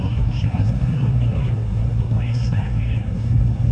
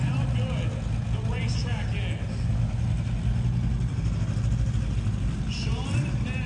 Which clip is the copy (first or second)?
first